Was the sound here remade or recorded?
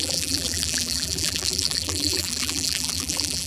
remade